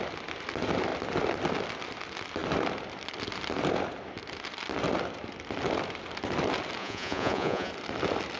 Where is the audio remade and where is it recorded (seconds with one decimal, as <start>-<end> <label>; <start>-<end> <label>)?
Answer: 0.0-6.8 recorded; 6.8-7.7 remade; 7.7-8.4 recorded